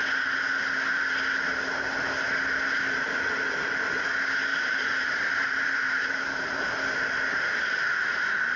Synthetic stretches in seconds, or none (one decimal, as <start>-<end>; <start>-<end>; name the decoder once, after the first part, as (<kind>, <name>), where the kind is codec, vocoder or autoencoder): 4.5-6.6 (vocoder, BigVGAN v2)